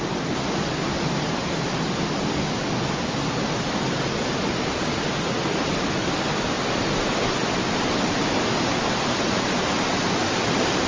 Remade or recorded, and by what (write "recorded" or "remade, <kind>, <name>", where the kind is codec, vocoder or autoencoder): recorded